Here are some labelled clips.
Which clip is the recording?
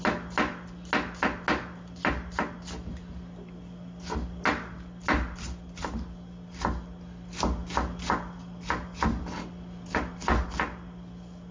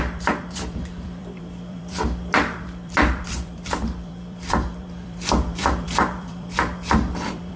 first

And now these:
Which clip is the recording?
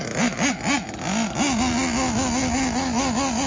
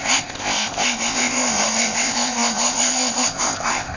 first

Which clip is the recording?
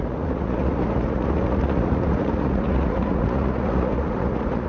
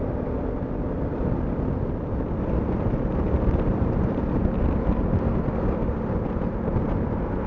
second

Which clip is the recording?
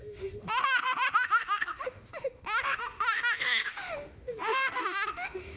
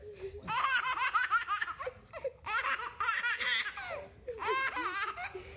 second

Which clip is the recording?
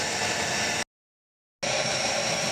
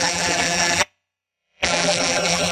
first